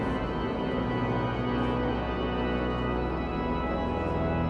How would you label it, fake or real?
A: real